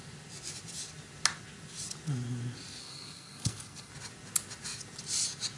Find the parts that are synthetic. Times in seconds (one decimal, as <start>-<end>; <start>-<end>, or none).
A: 2.8-3.9